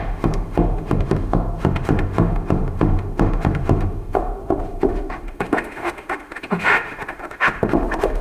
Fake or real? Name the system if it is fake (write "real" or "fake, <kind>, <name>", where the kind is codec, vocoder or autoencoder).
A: fake, autoencoder, DAC-VAE